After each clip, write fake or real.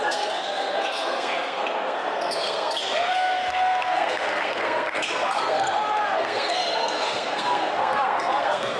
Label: fake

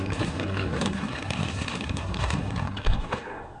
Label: fake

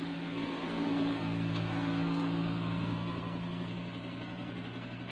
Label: fake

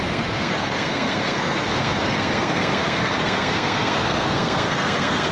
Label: fake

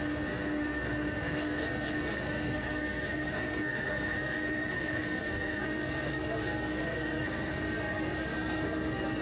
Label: fake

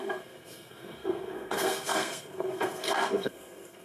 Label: fake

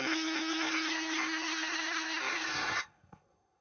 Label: fake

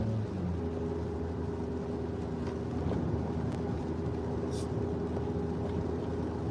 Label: real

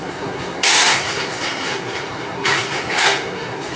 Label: fake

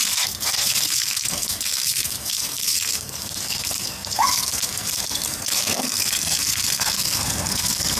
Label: fake